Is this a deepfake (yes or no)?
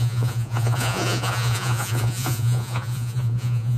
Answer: yes